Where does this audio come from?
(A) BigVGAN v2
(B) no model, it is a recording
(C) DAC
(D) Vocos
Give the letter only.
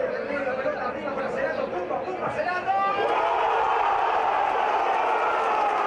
B